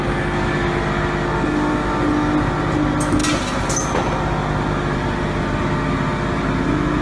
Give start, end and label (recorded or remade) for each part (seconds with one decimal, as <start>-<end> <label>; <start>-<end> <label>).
0.0-7.0 recorded